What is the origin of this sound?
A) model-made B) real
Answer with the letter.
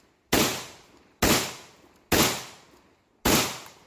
B